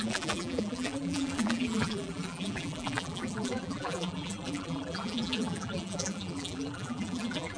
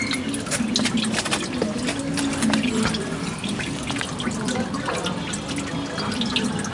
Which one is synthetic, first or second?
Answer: first